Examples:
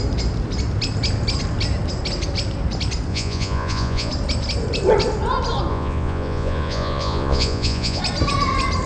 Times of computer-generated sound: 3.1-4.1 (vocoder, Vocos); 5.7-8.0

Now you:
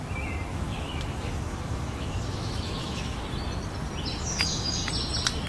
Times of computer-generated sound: 0.5-3.2 (autoencoder, DAC-VAE); 4.2-4.8

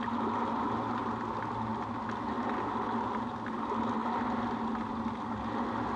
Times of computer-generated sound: none

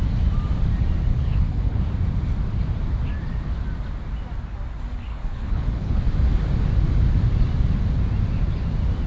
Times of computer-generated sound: 1.1-1.8 (codec, HILCodec); 5.1-6.0